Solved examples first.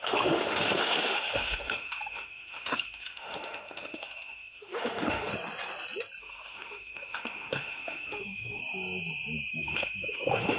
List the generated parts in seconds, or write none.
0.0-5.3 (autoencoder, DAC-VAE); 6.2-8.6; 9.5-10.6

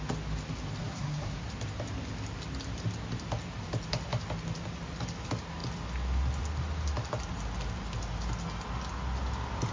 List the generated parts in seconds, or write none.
0.8-1.5 (codec, SNAC)

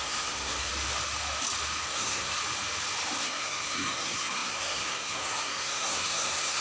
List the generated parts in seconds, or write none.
0.0-0.7 (codec, SNAC); 1.8-2.4; 3.2-6.6